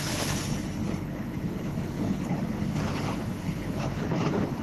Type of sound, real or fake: fake